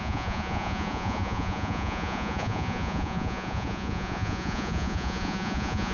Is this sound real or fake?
fake